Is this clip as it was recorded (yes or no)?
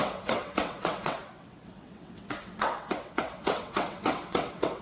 no